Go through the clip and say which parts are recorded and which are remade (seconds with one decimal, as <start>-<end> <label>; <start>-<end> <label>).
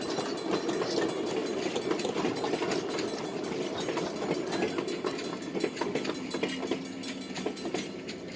0.0-8.4 recorded